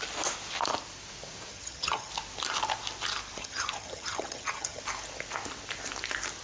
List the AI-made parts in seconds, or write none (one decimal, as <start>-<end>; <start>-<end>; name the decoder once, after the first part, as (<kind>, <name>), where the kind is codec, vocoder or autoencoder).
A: 1.5-2.1 (vocoder, HiFi-GAN); 3.4-4.8